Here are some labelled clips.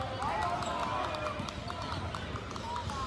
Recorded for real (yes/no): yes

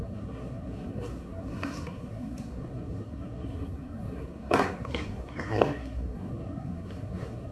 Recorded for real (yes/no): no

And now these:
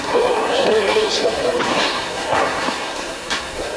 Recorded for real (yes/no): no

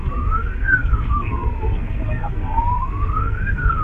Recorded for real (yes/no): no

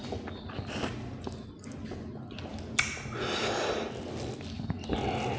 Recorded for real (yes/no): yes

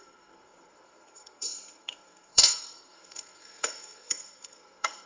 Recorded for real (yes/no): no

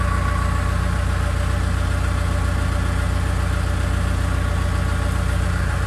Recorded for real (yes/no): yes